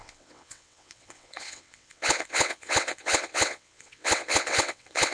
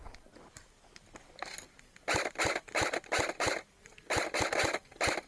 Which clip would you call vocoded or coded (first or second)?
first